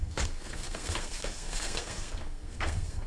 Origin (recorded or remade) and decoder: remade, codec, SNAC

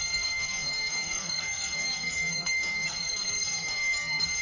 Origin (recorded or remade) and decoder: remade, codec, SNAC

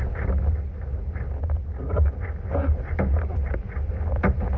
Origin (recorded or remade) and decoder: recorded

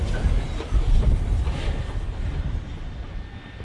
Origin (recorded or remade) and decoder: recorded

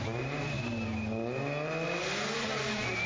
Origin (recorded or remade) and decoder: recorded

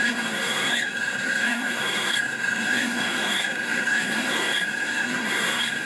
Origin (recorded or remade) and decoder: remade, codec, SNAC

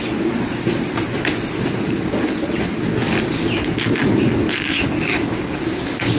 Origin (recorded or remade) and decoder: recorded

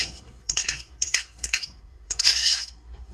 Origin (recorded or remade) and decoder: remade, codec, SNAC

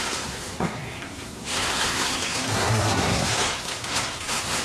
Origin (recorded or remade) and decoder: remade, codec, SNAC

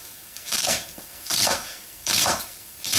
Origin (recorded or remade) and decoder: remade, codec, SNAC